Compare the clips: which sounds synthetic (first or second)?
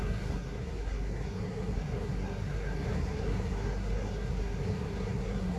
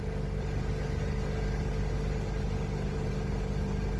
first